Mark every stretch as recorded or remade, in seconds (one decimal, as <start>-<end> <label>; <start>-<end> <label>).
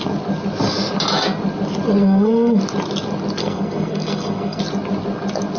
0.0-2.0 recorded; 2.0-2.6 remade; 2.6-3.4 recorded; 3.4-4.6 remade; 4.6-5.6 recorded